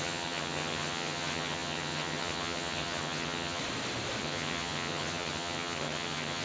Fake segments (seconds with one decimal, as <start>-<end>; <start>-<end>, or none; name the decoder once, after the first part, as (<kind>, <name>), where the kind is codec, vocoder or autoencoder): 0.0-3.6 (vocoder, HiFi-GAN); 4.2-6.4